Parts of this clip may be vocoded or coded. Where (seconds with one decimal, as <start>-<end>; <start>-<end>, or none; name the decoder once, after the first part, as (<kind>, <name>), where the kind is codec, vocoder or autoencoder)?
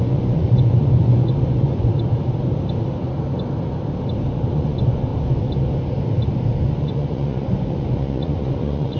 0.0-1.9 (vocoder, Vocos); 4.5-5.1; 6.7-9.0